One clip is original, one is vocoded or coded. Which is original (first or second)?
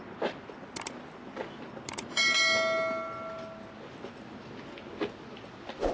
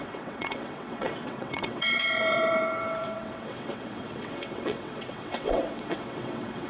first